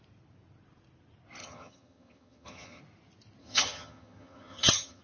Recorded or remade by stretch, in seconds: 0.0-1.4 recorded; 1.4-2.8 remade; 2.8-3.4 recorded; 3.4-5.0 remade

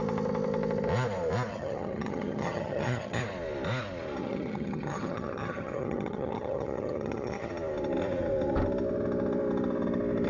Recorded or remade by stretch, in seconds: 0.0-1.5 recorded; 1.5-3.2 remade; 3.2-4.2 recorded; 4.2-7.5 remade; 7.5-10.3 recorded

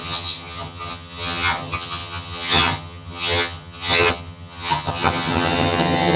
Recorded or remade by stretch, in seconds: 0.0-6.2 remade